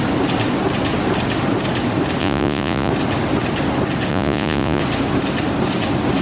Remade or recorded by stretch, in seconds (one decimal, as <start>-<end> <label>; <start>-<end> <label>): 0.0-2.2 recorded; 2.2-2.9 remade; 2.9-4.1 recorded; 4.1-4.8 remade; 4.8-6.2 recorded